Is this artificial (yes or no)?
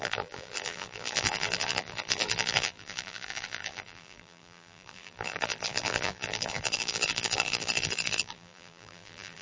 yes